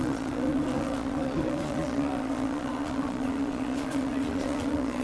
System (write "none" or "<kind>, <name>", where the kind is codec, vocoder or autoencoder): vocoder, Vocos